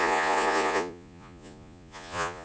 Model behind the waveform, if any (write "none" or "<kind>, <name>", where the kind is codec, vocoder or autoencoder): vocoder, Vocos